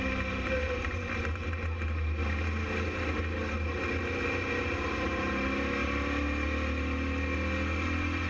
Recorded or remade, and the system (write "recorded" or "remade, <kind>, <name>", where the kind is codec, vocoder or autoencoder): recorded